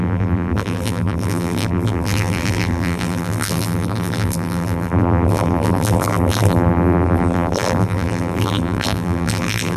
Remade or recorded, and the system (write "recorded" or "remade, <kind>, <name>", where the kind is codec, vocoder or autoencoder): remade, vocoder, BigVGAN v2